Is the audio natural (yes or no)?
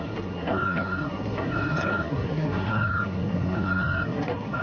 no